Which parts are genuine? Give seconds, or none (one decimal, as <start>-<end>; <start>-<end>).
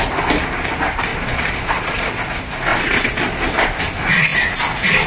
0.0-1.1; 2.1-2.7; 3.2-5.1